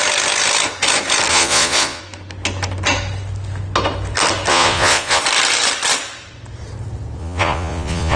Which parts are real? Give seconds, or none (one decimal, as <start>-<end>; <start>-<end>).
0.0-1.3; 2.0-4.5; 5.2-7.2